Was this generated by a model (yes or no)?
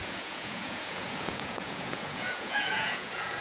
yes